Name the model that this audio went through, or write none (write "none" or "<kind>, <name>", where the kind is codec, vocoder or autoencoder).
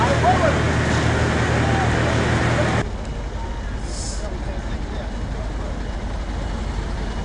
none